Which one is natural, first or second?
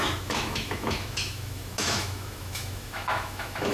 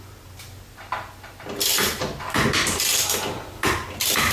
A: second